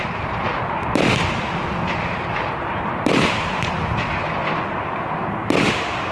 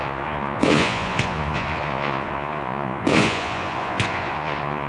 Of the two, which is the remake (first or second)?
second